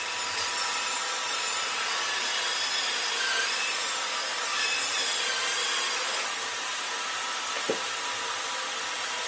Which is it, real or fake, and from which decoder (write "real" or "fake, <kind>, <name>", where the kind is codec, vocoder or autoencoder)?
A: real